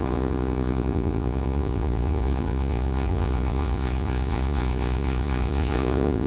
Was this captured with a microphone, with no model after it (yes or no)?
no